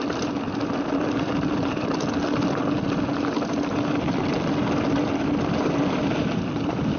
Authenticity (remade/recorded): recorded